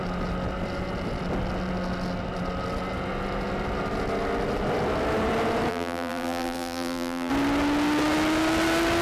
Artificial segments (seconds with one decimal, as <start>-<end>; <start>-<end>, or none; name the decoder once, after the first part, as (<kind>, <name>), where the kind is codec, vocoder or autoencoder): 5.7-7.3 (vocoder, BigVGAN v2)